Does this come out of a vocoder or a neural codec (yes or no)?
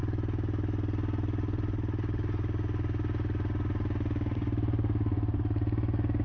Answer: no